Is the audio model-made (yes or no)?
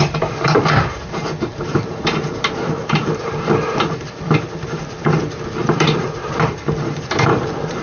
yes